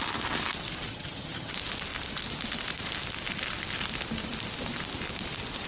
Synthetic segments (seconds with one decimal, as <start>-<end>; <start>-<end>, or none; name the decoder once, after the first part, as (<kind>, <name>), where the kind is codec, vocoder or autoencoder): 0.9-1.5 (vocoder, HiFi-GAN)